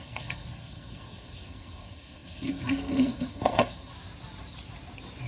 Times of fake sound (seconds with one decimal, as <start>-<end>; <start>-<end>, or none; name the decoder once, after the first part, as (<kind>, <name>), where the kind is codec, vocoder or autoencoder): 0.0-3.9 (codec, SNAC)